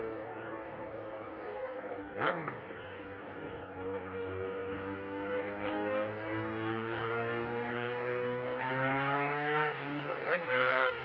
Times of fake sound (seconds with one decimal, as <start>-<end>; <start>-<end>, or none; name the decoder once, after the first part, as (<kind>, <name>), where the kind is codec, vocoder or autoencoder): 0.0-11.0 (codec, DAC)